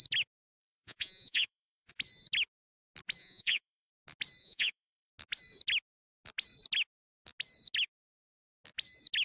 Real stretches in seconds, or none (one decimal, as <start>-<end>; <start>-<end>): 0.0-0.6; 1.9-3.2; 3.9-4.4; 5.1-9.2